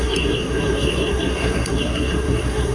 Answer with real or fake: fake